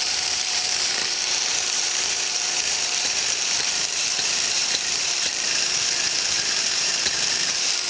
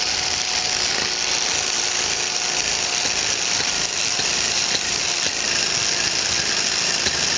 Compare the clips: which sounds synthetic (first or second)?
first